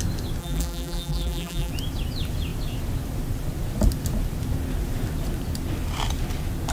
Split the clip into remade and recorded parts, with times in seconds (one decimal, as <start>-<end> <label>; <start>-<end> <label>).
0.0-0.4 recorded; 0.4-1.7 remade; 1.7-6.7 recorded